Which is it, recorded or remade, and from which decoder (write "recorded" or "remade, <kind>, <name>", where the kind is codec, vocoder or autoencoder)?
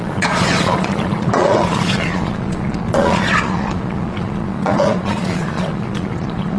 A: remade, vocoder, Vocos